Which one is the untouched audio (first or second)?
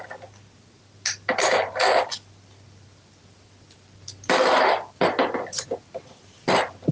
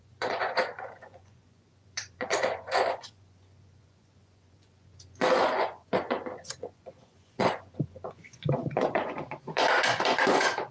first